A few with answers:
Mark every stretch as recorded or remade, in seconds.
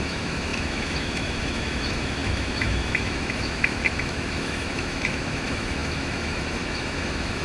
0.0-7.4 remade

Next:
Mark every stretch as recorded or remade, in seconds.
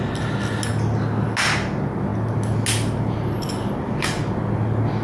0.0-5.0 recorded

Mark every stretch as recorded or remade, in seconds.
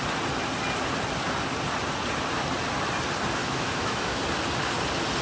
0.0-3.4 recorded; 3.4-4.2 remade; 4.2-5.2 recorded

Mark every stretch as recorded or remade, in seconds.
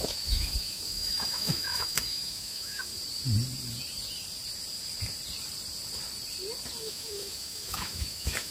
0.0-2.9 remade; 2.9-6.8 recorded; 6.8-8.5 remade